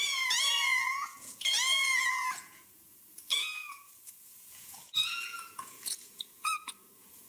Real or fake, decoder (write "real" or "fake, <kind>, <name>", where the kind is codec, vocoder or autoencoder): fake, vocoder, Vocos